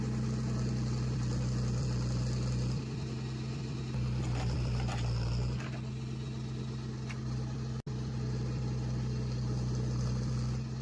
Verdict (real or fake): real